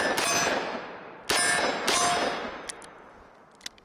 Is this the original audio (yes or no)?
yes